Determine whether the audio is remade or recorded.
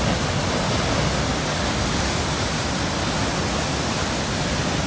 recorded